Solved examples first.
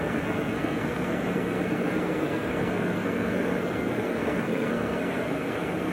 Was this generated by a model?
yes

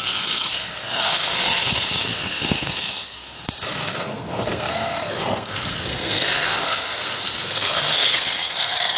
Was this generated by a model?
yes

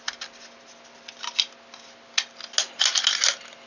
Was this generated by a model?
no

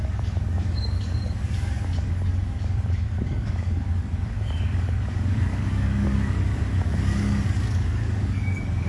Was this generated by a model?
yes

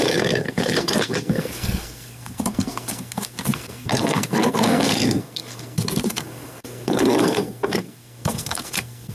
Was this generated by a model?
yes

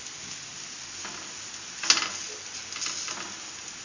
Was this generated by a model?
no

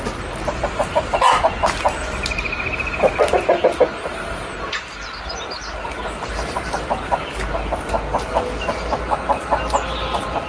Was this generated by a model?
no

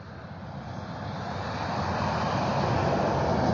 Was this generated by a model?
no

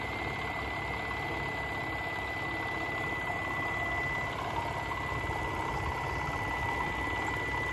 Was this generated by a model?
no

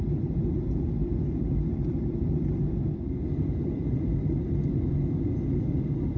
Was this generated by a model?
yes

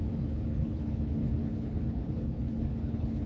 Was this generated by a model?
yes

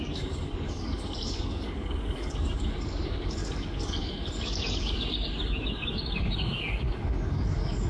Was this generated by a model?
yes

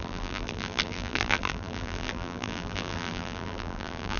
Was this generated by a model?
yes